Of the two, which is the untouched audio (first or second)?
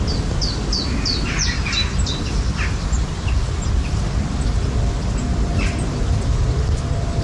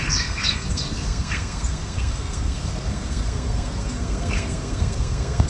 first